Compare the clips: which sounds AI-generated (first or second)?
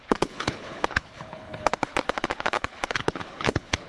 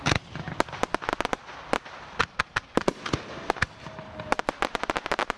first